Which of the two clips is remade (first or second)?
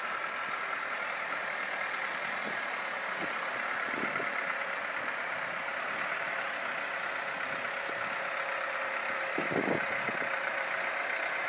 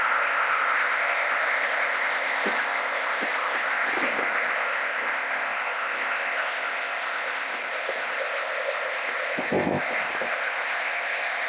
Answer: second